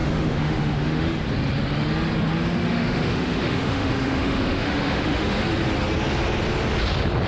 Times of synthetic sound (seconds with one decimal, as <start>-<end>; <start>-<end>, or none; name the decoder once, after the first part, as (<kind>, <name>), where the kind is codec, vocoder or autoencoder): 0.0-1.2 (autoencoder, DAC-VAE); 2.7-5.4